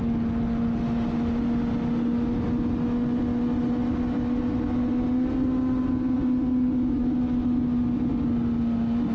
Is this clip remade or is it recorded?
recorded